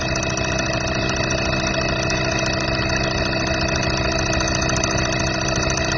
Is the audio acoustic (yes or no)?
yes